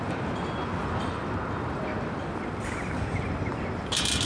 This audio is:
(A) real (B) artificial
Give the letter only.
A